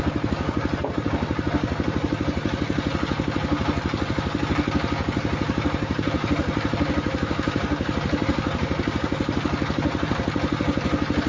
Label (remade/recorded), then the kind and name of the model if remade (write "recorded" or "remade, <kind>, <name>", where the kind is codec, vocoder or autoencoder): recorded